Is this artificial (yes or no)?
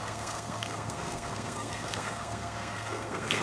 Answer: yes